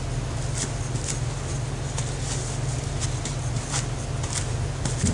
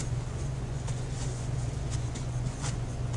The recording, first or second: first